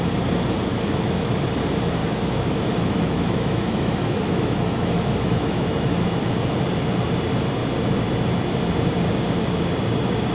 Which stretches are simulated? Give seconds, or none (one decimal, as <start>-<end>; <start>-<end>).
0.7-1.4; 2.0-6.2